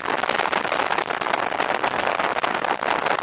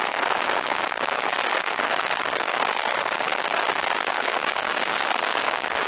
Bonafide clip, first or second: first